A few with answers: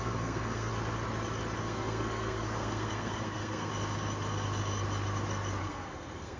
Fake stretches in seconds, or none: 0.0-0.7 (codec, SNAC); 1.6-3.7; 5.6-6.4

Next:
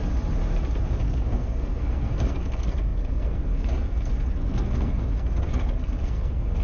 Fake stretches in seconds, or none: 0.9-6.6 (codec, SNAC)

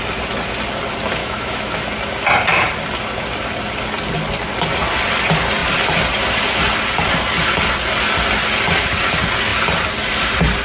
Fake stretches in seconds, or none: 1.2-1.8 (autoencoder, DAC-VAE)

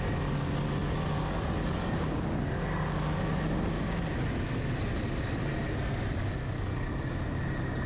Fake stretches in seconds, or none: none

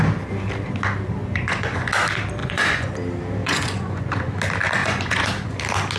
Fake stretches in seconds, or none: 1.2-1.9 (vocoder, Vocos); 2.4-2.9; 3.4-4.3; 4.8-5.6

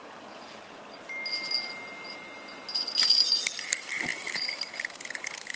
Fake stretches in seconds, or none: 4.1-5.6 (vocoder, BigVGAN v2)